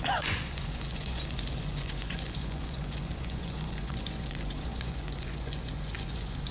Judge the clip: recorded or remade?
remade